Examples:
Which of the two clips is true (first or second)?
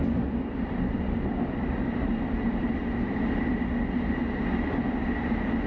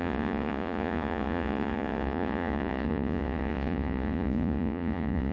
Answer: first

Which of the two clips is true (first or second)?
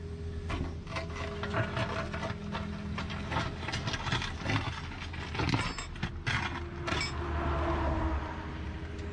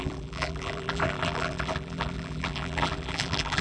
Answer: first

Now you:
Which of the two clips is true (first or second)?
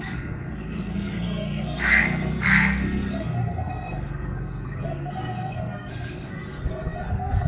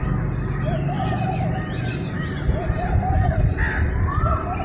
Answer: second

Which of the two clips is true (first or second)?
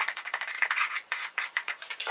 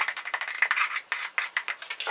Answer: second